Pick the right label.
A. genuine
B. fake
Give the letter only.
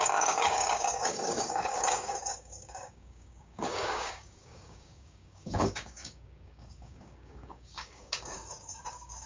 B